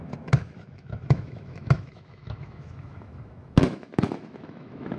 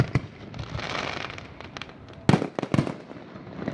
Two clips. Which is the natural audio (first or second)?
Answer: second